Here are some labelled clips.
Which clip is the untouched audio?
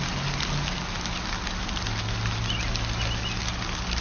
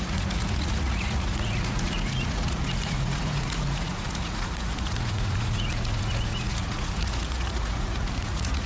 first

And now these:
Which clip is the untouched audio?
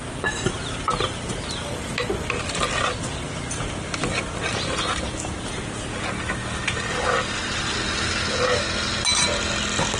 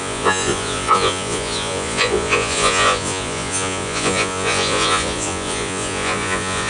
first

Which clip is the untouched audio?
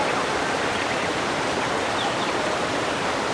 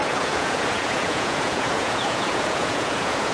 first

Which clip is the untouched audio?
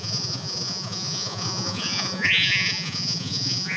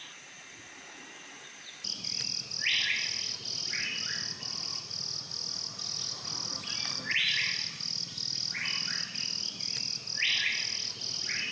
second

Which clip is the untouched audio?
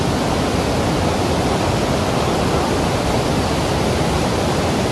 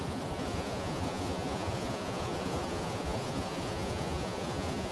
first